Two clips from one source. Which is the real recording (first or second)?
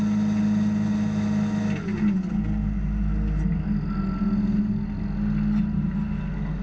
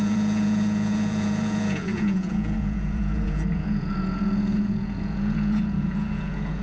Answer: first